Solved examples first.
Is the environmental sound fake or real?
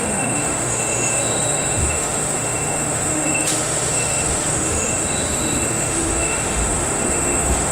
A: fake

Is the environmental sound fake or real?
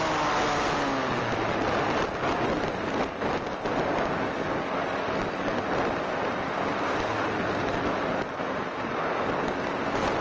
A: real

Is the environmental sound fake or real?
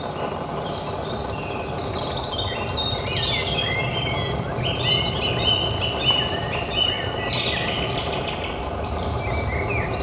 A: real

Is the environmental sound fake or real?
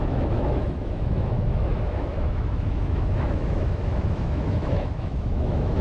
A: fake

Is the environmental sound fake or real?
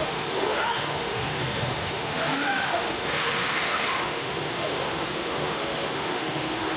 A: fake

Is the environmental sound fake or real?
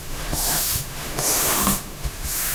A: fake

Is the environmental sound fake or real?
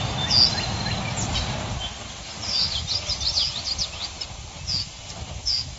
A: real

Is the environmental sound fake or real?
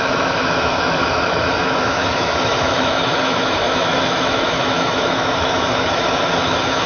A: fake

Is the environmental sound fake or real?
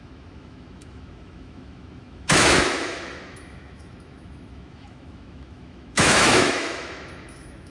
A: fake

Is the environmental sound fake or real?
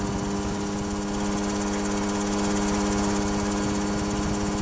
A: real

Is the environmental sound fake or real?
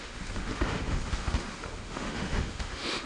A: fake